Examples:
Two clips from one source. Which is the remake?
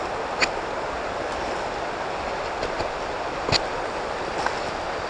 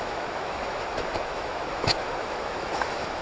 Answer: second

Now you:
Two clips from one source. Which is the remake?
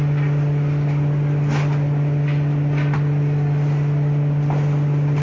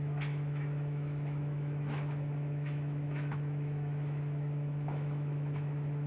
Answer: second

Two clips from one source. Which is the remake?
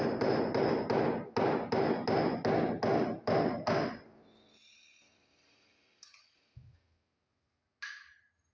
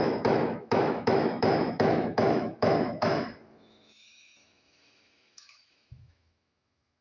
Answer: second